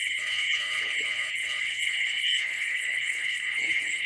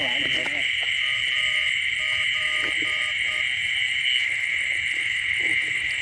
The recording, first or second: second